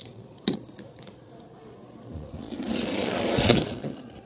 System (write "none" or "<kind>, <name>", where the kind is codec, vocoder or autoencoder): vocoder, Vocos